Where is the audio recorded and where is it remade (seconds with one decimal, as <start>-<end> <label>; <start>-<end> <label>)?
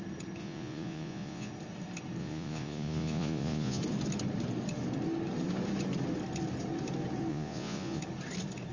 0.0-0.4 recorded; 0.4-1.5 remade; 1.5-2.2 recorded; 2.2-3.8 remade; 3.8-7.3 recorded; 7.3-8.0 remade; 8.0-8.7 recorded